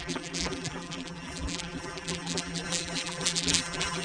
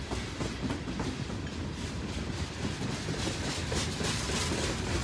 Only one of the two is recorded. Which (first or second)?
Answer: second